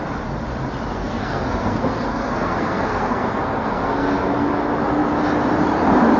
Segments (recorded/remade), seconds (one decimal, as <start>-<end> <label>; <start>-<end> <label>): 0.0-0.9 recorded; 0.9-4.6 remade; 4.6-6.2 recorded